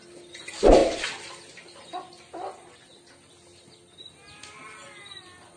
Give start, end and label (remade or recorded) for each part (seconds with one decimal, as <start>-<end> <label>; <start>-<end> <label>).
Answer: 0.0-5.6 recorded